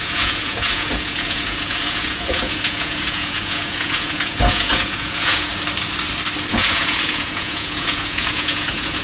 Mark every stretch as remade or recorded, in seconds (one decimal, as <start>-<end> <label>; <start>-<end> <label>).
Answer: 0.0-5.5 remade; 5.5-6.5 recorded; 6.5-9.0 remade